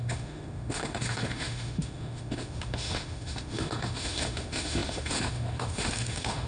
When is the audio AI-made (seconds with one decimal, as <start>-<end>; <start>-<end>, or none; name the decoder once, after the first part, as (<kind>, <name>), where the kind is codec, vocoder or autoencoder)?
0.0-6.5 (autoencoder, DAC-VAE)

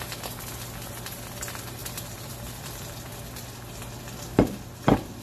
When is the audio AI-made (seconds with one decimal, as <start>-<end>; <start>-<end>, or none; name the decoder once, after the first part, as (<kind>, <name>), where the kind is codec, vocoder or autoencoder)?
1.8-3.1 (vocoder, BigVGAN v2)

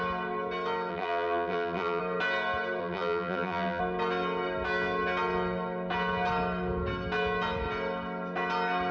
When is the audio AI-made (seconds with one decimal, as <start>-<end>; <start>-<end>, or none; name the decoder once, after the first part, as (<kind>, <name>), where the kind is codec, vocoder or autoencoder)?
0.9-2.0 (vocoder, BigVGAN v2); 2.8-3.8

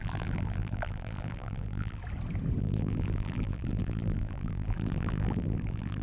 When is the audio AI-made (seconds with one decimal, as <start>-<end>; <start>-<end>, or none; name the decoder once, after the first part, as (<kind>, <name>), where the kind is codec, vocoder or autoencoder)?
0.0-2.0 (vocoder, BigVGAN v2); 2.6-6.0